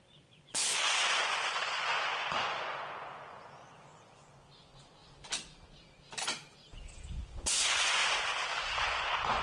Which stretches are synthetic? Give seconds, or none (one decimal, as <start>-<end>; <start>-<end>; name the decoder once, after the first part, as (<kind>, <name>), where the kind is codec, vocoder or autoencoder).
0.0-5.0 (vocoder, Vocos); 6.5-8.0; 8.6-9.4